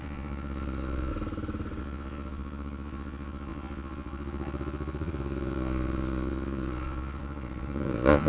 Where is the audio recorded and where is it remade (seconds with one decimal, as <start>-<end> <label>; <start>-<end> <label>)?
0.0-1.1 remade; 1.1-1.8 recorded; 1.8-8.3 remade